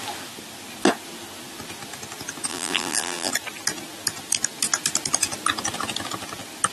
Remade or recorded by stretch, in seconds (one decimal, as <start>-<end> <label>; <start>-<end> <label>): 0.0-2.5 recorded; 2.5-3.3 remade; 3.3-6.7 recorded